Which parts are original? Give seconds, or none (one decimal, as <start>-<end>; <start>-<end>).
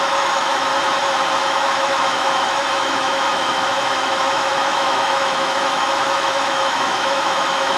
0.7-1.4